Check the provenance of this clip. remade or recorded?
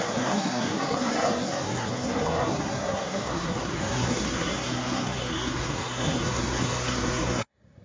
remade